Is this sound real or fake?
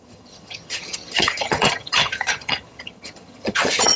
fake